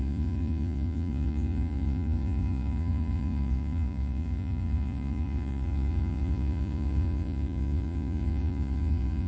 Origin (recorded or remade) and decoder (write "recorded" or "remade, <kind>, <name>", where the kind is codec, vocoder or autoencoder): remade, vocoder, Vocos